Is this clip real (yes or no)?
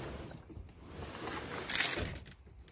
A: yes